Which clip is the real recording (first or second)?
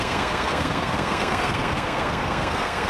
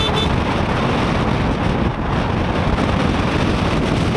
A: second